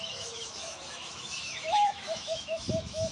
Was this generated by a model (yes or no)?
yes